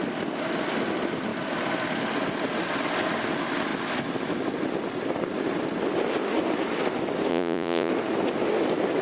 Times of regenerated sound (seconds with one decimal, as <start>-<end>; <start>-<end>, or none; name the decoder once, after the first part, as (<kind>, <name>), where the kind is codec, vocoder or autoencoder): 7.3-7.9 (vocoder, Vocos)